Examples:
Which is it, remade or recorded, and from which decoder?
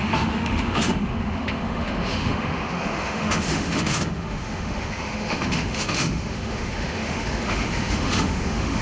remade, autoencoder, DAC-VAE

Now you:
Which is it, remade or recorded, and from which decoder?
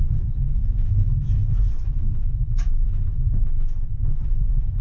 remade, autoencoder, DAC-VAE